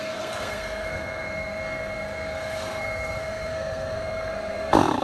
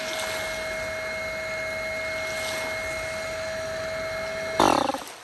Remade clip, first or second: first